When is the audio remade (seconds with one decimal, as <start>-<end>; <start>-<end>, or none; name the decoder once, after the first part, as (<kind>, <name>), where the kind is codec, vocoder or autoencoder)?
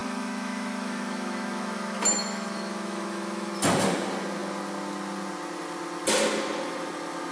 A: 0.0-3.5 (autoencoder, DAC-VAE)